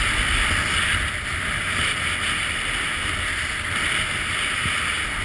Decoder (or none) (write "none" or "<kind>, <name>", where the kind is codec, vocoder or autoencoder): none